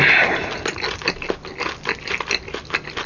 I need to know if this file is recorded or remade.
recorded